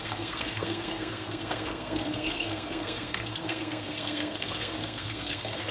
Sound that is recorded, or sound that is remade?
remade